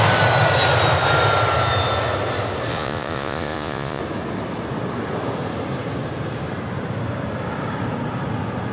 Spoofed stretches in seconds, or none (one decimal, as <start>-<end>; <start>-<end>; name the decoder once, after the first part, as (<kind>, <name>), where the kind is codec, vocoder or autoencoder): 2.7-4.0 (vocoder, Vocos)